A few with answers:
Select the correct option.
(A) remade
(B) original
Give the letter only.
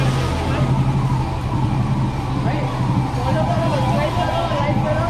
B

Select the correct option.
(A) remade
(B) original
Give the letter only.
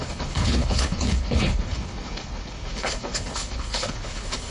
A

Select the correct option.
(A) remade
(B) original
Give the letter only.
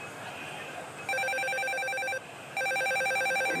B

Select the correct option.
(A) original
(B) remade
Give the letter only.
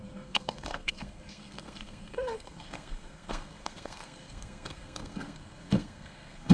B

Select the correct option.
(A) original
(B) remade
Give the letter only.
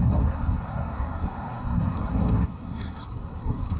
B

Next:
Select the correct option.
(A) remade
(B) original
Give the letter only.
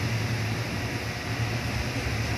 B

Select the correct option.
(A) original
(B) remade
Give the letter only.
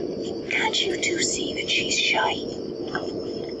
B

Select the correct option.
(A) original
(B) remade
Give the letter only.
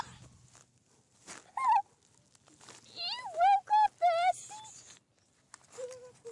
A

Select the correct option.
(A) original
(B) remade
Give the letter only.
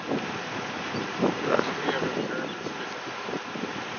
A